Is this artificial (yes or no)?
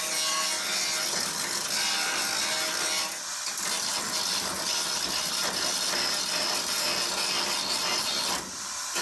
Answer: no